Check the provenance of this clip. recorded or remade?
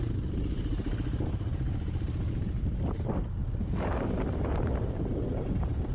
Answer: remade